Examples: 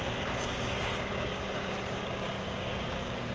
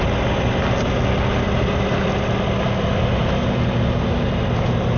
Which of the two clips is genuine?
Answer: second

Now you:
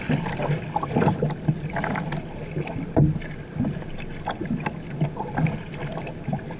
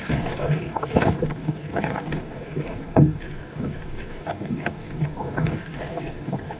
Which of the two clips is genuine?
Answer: first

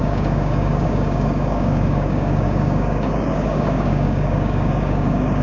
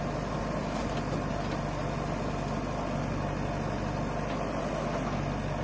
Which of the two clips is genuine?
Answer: second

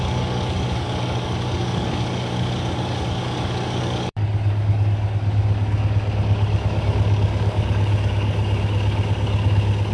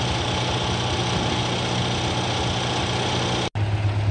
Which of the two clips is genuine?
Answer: second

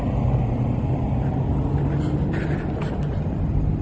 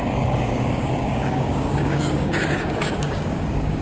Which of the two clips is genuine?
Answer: first